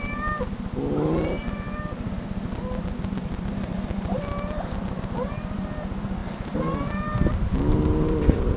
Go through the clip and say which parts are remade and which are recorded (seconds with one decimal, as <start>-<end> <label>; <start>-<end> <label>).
0.0-8.6 recorded